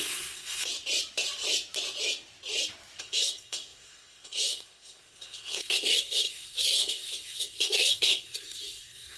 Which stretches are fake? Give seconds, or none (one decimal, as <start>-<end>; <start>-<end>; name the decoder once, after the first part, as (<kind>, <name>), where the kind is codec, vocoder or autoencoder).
0.0-0.7 (codec, SNAC); 3.0-9.2